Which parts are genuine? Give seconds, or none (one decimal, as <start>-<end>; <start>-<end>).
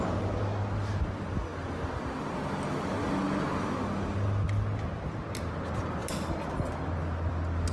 0.0-7.7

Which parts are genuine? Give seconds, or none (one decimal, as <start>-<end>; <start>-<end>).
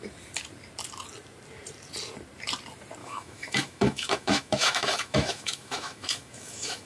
0.0-3.0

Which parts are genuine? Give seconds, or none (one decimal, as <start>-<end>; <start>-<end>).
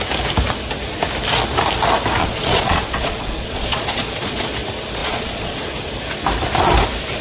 0.0-2.2; 4.4-5.0; 5.6-7.2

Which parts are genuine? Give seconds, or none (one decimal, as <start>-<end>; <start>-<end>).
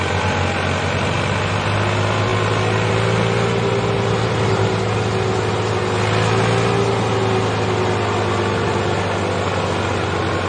0.0-10.5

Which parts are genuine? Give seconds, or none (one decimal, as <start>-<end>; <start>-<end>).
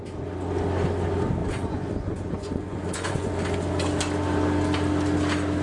0.0-1.4; 3.3-5.6